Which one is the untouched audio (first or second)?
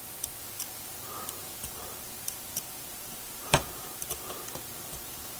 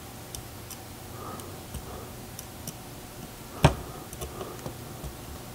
second